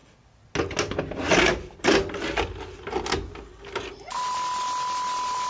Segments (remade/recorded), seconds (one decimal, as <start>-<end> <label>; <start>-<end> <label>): 0.0-5.5 recorded